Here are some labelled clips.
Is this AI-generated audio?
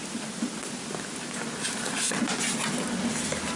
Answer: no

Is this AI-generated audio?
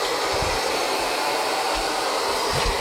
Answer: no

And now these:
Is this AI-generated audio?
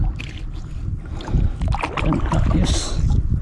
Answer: no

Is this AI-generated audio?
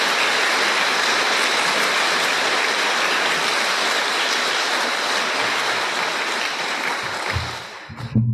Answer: no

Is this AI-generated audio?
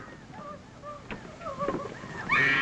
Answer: no